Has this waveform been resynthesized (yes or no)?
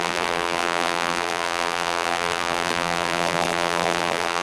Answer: yes